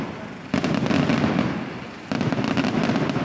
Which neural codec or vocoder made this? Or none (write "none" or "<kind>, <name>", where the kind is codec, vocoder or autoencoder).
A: none